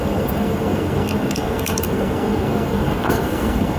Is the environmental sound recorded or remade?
remade